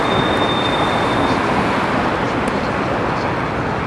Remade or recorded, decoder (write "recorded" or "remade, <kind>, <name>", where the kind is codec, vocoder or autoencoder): recorded